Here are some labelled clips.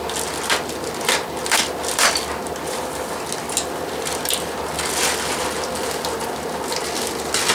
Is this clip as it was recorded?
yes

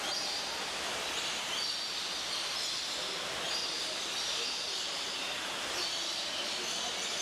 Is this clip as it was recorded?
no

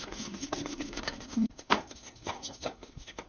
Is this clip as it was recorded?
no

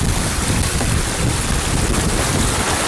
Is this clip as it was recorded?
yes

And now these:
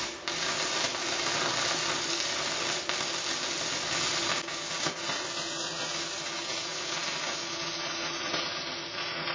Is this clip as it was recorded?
yes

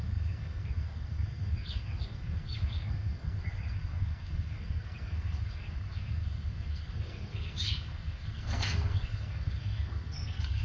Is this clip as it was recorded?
no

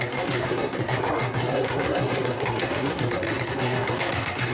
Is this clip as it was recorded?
no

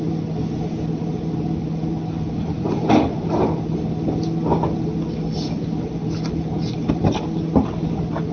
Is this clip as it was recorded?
yes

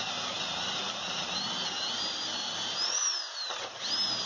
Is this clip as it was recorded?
yes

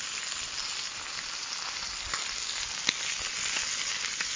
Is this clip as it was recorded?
yes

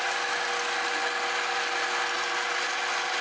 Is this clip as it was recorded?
yes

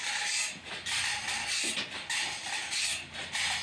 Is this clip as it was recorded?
yes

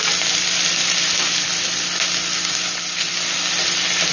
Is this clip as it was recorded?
yes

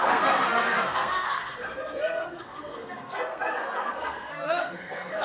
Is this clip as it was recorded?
no